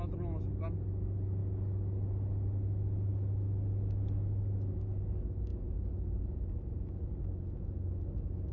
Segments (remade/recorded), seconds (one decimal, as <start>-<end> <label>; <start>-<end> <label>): 0.0-8.5 recorded